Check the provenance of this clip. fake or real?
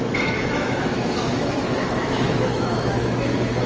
fake